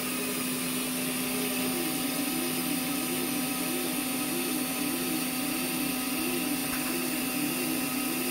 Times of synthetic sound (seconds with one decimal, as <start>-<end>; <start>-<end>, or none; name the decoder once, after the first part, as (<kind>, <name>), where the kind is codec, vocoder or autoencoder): 0.0-4.7 (vocoder, BigVGAN v2); 6.6-7.2